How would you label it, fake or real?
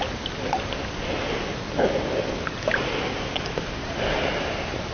real